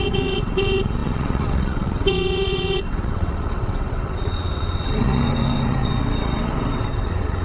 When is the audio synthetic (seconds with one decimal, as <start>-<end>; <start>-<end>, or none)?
0.0-7.4